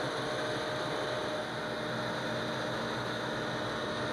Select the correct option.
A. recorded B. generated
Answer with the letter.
A